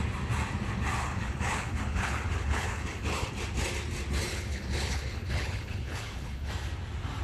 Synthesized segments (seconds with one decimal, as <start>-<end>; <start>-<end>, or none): 1.0-3.3; 4.3-6.5